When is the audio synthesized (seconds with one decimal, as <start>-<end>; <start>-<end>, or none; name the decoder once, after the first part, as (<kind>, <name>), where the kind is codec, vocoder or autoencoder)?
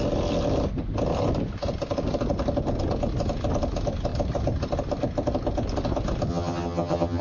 6.3-7.2 (vocoder, HiFi-GAN)